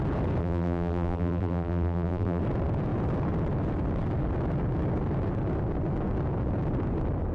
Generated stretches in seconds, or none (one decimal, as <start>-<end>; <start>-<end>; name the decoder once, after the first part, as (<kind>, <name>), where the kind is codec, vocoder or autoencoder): 0.4-2.4 (vocoder, BigVGAN v2)